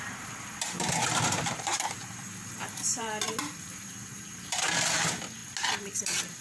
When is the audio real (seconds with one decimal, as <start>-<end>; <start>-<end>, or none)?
5.4-6.0